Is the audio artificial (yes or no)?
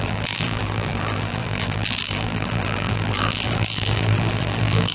yes